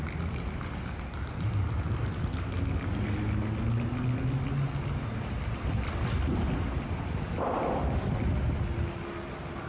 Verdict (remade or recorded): recorded